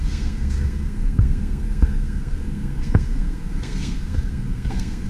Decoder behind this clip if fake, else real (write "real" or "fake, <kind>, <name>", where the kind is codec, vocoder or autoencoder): fake, codec, SNAC